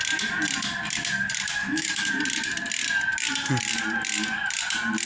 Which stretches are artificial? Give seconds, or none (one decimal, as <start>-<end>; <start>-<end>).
1.6-2.2